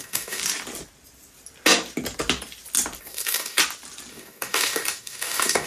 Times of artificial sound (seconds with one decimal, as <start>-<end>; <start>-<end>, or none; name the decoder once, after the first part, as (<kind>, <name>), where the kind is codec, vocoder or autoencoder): 0.0-0.4 (codec, DAC); 3.0-3.6; 4.1-5.7